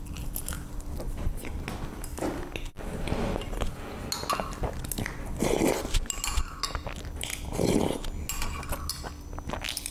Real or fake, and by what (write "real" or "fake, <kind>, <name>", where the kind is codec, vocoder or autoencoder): real